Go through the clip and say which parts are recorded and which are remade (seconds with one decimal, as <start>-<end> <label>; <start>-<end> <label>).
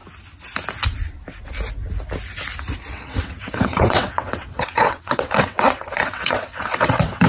0.0-2.9 recorded; 2.9-7.3 remade